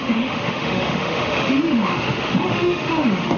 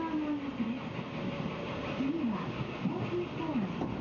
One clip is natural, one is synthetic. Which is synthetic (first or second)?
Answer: first